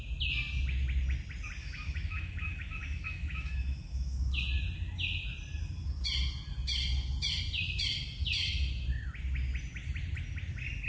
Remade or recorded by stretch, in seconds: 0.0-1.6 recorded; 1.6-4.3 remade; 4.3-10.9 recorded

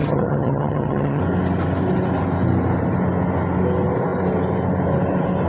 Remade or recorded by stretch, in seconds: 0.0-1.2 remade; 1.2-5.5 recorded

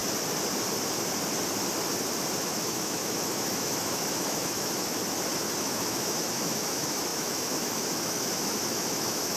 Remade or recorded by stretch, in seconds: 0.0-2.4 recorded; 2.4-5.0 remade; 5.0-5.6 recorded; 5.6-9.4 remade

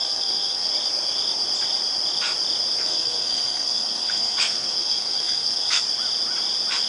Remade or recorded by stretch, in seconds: 0.0-0.7 remade; 0.7-2.8 recorded; 2.8-5.8 remade; 5.8-6.9 recorded

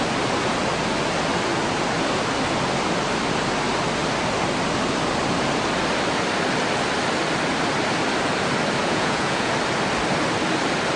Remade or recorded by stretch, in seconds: 0.0-8.8 recorded; 8.8-9.5 remade; 9.5-11.0 recorded

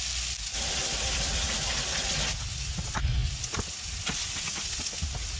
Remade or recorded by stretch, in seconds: 0.0-5.4 recorded

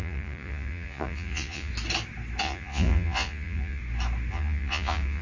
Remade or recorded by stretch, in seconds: 0.0-1.7 remade; 1.7-2.4 recorded; 2.4-3.8 remade; 3.8-4.3 recorded; 4.3-5.2 remade